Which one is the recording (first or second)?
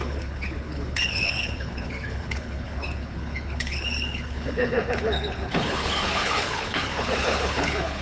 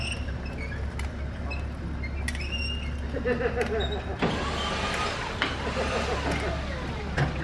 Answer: second